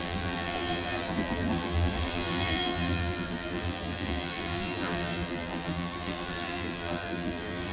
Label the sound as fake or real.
fake